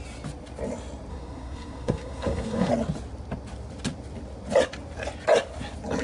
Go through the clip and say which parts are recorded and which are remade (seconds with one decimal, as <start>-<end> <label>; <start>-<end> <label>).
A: 0.0-1.1 recorded; 1.1-2.7 remade; 2.7-6.0 recorded